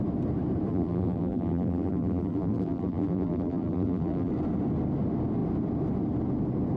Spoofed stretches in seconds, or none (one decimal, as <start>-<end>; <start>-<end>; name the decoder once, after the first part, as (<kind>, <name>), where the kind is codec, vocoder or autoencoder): 0.7-4.3 (vocoder, BigVGAN v2)